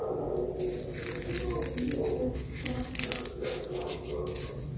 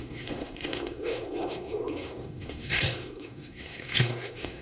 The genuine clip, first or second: first